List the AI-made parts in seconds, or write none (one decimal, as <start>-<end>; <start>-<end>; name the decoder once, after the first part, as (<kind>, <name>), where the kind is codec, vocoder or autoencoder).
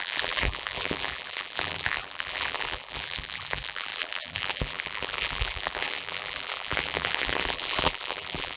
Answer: 0.0-8.6 (vocoder, BigVGAN v2)